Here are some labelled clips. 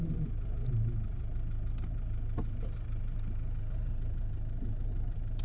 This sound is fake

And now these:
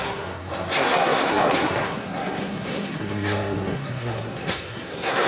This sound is fake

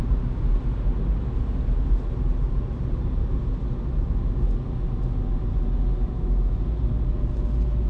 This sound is real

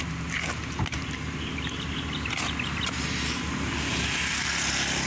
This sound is real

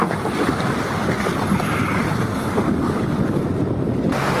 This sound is real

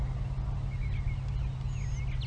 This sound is real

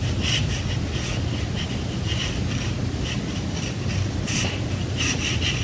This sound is real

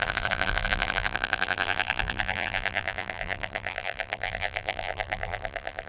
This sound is fake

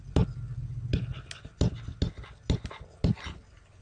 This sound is real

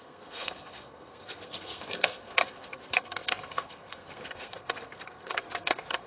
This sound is fake